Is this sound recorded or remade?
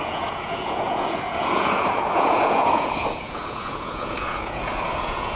remade